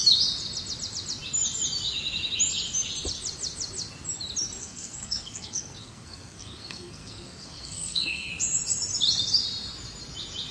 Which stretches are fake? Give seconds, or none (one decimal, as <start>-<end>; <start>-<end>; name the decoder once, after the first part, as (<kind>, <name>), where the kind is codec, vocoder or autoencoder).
4.6-8.3 (codec, SNAC)